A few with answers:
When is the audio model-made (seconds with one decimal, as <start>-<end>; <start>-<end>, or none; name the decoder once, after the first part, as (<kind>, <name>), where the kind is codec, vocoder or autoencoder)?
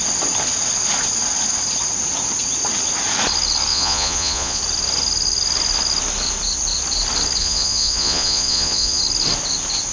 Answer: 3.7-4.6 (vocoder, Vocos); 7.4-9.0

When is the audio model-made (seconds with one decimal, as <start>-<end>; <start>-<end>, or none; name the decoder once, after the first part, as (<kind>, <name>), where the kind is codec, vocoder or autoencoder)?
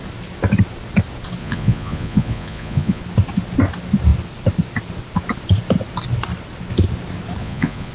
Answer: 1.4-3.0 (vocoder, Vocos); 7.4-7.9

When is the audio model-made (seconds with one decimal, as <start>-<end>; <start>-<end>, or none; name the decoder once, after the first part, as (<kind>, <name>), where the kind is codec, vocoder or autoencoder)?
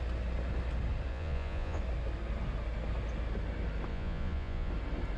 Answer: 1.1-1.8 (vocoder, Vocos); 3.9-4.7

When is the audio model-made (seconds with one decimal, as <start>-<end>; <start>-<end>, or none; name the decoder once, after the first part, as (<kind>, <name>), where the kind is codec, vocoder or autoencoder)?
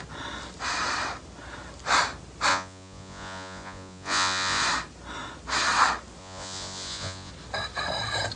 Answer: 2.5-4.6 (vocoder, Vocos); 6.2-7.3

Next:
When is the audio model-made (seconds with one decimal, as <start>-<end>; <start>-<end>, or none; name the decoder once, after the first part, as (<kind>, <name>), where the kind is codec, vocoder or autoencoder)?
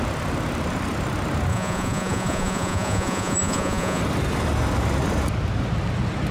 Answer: 1.5-4.0 (vocoder, Vocos)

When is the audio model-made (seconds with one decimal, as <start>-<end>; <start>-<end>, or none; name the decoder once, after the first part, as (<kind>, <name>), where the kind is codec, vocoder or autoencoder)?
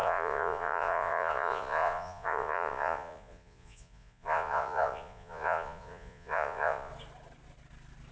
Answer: 0.0-6.9 (vocoder, Vocos)